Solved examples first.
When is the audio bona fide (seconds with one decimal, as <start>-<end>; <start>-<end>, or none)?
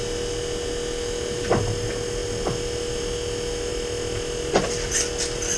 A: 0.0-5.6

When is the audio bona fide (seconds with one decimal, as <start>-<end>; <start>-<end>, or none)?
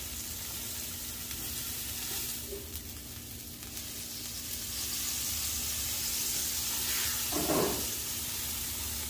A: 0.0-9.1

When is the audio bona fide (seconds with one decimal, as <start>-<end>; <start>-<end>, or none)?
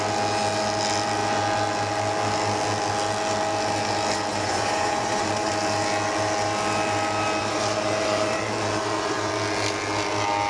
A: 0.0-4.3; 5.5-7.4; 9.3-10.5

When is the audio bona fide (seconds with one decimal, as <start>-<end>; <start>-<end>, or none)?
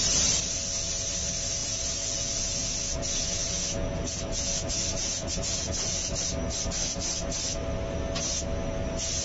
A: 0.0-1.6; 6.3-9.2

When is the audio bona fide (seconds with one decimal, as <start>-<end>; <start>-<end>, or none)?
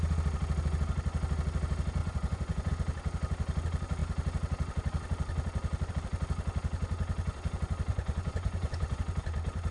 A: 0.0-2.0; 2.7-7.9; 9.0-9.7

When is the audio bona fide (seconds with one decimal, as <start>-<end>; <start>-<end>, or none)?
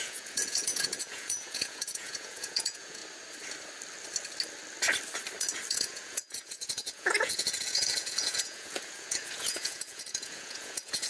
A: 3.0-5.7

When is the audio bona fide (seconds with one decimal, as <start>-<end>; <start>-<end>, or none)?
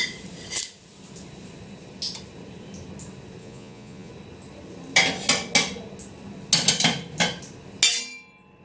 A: 0.0-3.4; 4.1-8.6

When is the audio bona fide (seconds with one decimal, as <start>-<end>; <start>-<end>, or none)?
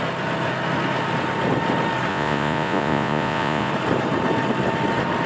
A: 0.0-2.1; 3.7-5.3